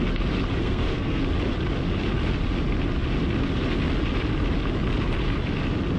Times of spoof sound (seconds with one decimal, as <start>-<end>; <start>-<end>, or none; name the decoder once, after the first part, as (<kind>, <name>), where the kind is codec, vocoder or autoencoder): 0.6-1.2 (codec, SNAC)